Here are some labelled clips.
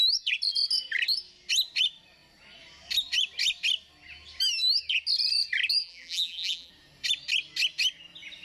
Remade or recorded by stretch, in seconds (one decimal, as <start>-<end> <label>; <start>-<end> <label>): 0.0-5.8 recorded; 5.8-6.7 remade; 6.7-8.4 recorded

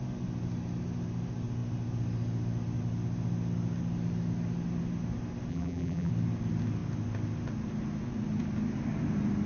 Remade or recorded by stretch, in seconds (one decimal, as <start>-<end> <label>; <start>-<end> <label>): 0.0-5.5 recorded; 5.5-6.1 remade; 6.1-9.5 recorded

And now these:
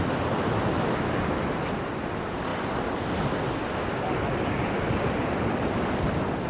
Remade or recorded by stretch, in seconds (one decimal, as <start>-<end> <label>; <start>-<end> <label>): 0.0-6.5 recorded

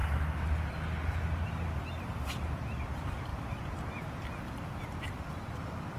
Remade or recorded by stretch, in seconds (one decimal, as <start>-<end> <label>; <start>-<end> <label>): 0.0-1.1 recorded; 1.1-3.3 remade; 3.3-4.8 recorded; 4.8-6.0 remade